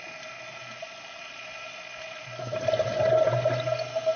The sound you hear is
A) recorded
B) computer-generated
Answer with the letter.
A